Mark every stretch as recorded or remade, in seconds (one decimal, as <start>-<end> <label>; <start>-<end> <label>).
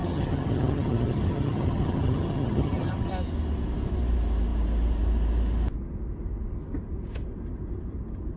0.0-3.1 remade; 3.1-8.4 recorded